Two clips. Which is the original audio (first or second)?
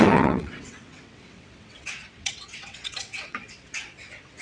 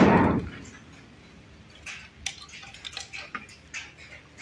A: second